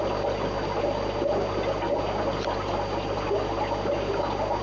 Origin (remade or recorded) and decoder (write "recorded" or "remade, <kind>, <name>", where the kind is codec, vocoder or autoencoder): recorded